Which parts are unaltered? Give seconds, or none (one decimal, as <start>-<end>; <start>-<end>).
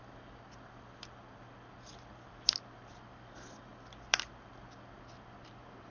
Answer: 0.0-5.9